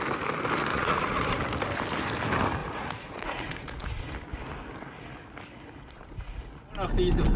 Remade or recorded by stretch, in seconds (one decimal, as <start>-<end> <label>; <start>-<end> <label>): 0.0-0.7 recorded; 0.7-1.4 remade; 1.4-2.6 recorded; 2.6-4.0 remade; 4.0-5.8 recorded; 5.8-6.5 remade; 6.5-7.4 recorded